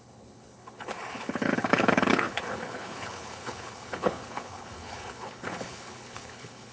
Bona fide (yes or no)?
no